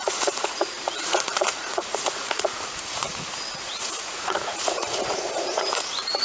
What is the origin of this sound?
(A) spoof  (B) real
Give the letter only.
A